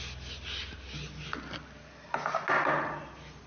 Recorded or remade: recorded